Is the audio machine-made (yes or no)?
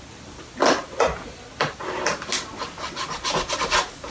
no